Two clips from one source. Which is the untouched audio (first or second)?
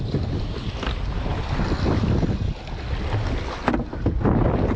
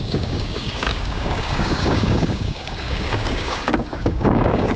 first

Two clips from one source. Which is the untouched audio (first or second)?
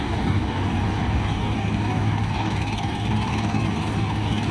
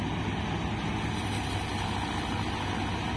second